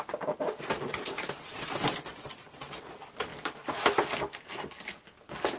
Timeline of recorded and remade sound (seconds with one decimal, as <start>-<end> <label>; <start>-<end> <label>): 0.0-5.6 recorded